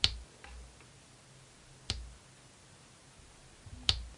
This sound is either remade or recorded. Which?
recorded